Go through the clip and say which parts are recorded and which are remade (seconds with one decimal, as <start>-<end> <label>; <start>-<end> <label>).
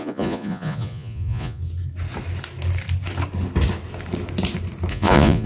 0.0-1.6 remade; 1.6-4.9 recorded; 4.9-5.5 remade